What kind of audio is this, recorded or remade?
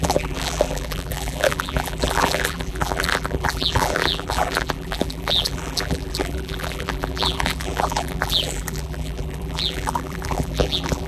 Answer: remade